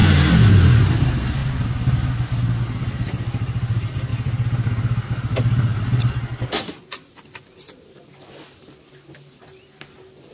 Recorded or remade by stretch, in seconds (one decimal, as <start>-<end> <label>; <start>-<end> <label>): 0.0-10.3 recorded